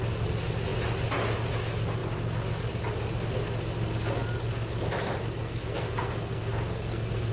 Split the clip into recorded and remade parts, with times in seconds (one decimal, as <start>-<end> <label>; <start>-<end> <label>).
0.0-5.4 recorded; 5.4-7.3 remade